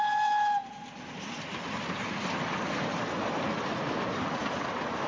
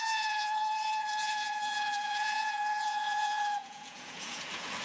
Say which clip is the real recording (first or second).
first